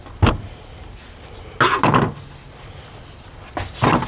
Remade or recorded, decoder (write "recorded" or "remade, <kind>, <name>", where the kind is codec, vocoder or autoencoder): recorded